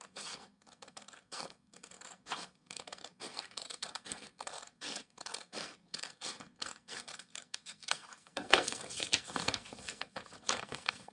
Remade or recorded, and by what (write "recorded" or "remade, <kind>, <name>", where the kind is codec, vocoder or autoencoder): remade, codec, SNAC